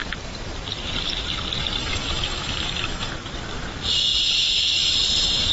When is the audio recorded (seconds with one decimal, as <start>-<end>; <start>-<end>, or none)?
0.0-1.8; 3.1-5.5